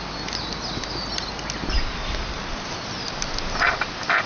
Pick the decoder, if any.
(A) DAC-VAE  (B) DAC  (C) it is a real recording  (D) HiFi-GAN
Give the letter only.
C